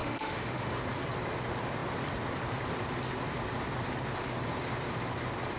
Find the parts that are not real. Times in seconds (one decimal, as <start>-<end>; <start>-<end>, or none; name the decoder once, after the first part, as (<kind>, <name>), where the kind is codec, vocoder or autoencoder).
0.0-0.8 (autoencoder, DAC-VAE)